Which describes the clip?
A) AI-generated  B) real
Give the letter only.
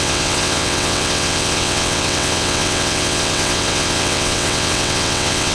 A